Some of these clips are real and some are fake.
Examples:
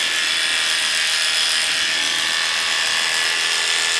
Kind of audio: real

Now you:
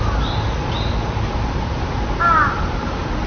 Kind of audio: real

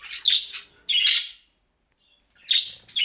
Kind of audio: real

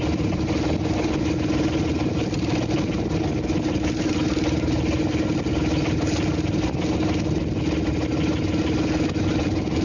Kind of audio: real